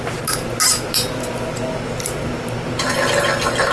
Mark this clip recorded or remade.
recorded